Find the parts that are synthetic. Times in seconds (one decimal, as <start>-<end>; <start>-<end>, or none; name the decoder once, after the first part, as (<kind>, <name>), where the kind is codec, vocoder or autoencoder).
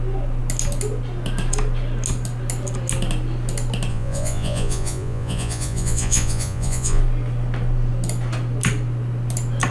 3.9-7.0 (vocoder, Vocos)